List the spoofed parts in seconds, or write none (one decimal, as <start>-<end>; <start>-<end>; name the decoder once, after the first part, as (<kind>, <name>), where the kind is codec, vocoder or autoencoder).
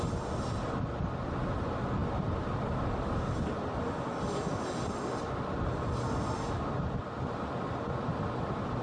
none